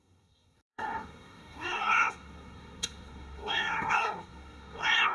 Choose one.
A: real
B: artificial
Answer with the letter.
B